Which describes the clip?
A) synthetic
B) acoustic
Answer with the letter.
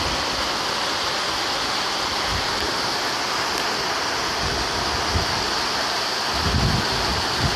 B